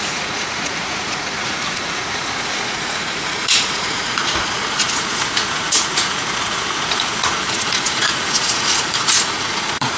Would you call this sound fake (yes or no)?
yes